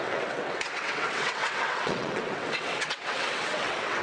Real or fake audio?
fake